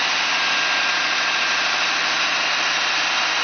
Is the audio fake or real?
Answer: real